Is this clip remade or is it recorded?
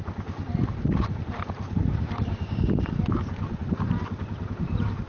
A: remade